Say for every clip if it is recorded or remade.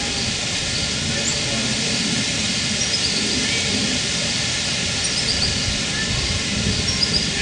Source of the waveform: recorded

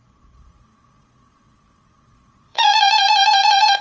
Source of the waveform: remade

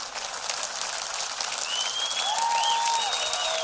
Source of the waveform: recorded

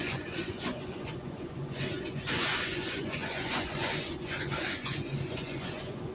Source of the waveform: remade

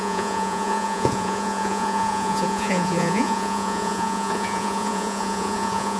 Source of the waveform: remade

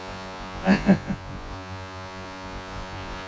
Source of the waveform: remade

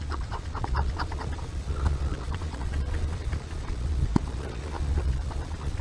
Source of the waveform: remade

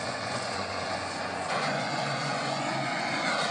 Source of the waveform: remade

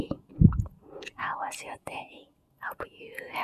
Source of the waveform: remade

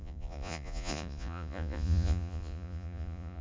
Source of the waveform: remade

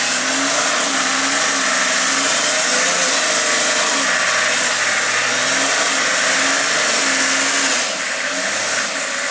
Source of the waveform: recorded